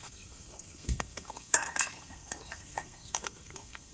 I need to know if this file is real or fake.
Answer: fake